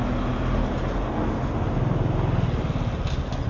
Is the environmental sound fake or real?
real